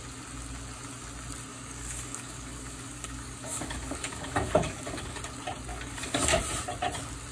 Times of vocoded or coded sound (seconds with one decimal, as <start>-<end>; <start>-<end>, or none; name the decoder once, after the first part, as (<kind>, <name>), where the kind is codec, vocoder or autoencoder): 1.5-5.2 (codec, DAC); 5.7-6.4